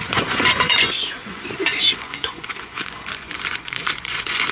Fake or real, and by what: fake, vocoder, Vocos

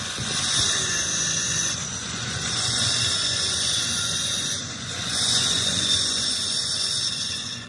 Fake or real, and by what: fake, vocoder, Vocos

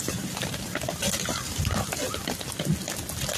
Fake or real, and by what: real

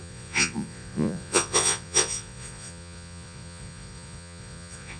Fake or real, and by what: fake, vocoder, Vocos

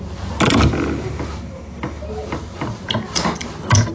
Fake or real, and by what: real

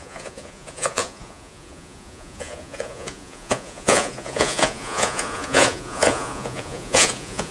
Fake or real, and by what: fake, vocoder, Vocos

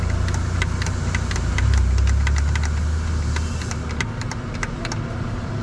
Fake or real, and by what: real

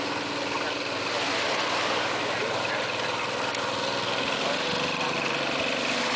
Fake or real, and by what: real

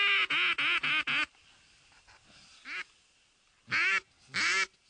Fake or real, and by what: real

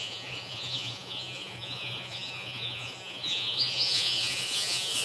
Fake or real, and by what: fake, vocoder, Vocos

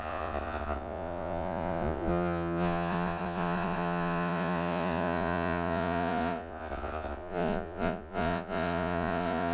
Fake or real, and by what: fake, vocoder, Vocos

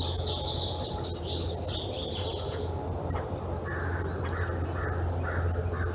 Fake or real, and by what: real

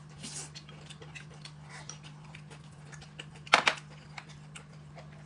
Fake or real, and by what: real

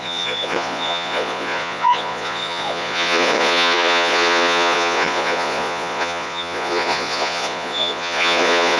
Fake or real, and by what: fake, vocoder, Vocos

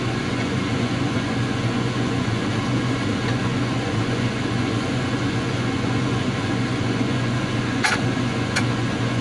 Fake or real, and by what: fake, vocoder, Vocos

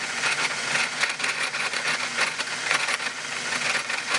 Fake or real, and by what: fake, vocoder, Vocos